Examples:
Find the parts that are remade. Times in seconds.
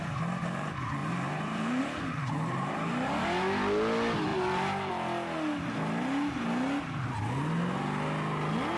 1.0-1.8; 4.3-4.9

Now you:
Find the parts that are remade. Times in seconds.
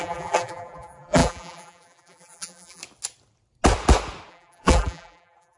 0.0-2.8; 4.3-5.6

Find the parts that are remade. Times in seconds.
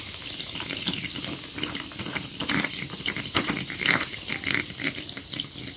2.4-4.3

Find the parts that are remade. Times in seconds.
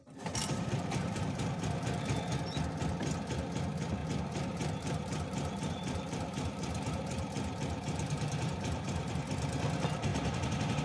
0.4-2.2; 4.0-9.1; 10.1-10.8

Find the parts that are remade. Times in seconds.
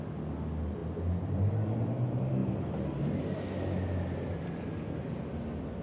none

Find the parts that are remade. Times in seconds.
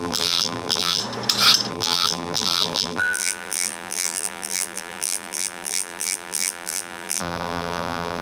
0.0-1.0; 1.7-8.2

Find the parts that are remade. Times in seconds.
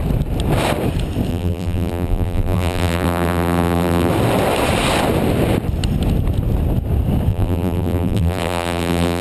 1.3-4.1; 7.3-9.2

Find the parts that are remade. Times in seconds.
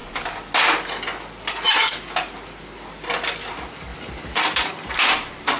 3.9-4.4